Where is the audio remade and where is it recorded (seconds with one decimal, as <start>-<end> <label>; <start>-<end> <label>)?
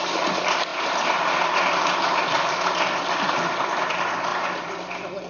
0.0-4.3 recorded; 4.3-5.3 remade